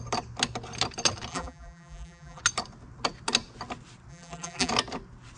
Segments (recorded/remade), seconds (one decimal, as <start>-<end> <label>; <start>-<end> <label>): 0.0-1.3 recorded; 1.3-2.4 remade; 2.4-4.1 recorded; 4.1-4.7 remade; 4.7-5.4 recorded